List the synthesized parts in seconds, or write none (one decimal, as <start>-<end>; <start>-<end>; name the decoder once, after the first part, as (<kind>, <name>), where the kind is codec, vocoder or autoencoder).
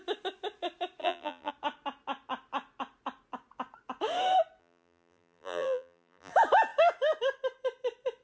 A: 1.0-1.5 (vocoder, BigVGAN v2); 4.6-6.3